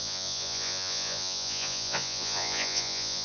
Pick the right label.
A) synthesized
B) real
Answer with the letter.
A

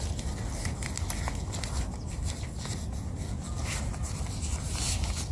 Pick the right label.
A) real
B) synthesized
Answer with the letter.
A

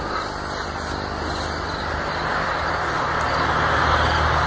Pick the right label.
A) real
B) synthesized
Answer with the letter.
A